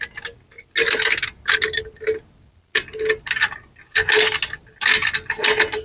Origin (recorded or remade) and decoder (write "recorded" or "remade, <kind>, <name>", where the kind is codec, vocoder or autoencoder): recorded